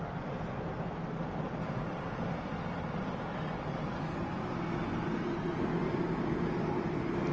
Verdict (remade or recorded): recorded